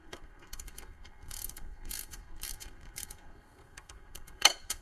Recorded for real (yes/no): no